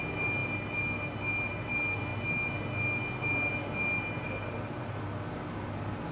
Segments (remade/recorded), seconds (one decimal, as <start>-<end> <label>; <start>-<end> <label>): 0.0-6.1 recorded